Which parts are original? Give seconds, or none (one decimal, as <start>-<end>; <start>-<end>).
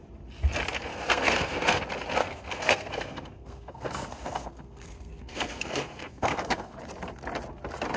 0.0-0.9; 1.8-2.2; 6.8-8.0